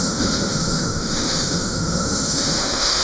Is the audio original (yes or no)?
no